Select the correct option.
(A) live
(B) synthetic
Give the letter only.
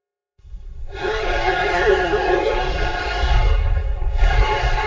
B